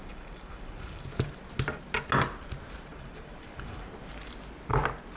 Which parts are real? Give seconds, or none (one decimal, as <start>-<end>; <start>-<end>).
1.4-2.9; 3.9-5.2